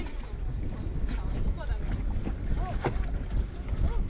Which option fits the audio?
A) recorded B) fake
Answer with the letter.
A